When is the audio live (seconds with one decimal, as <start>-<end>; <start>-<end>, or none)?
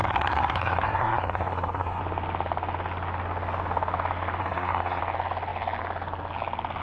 2.0-4.4; 5.0-6.8